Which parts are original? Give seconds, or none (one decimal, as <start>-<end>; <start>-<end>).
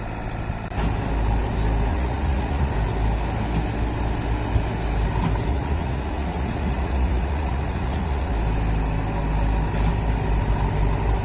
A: 0.0-1.9; 2.7-5.5; 8.3-11.2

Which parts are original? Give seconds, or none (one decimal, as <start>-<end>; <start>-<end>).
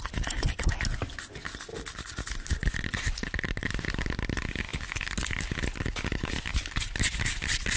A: 0.0-7.8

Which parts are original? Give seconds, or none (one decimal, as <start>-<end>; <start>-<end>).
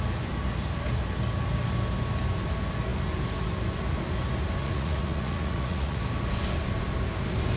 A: 0.0-4.6; 6.0-7.6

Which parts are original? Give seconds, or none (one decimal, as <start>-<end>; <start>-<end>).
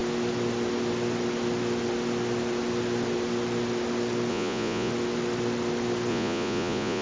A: 0.0-4.3; 4.9-6.1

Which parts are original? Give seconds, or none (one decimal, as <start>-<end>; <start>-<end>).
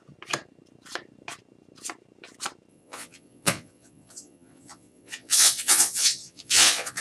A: 0.0-2.7